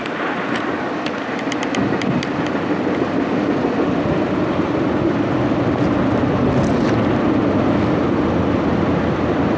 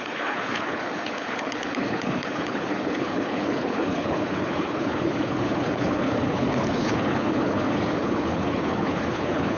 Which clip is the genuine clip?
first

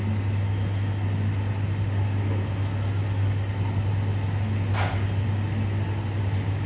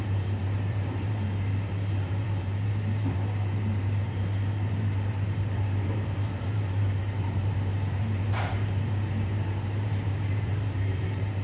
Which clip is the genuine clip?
first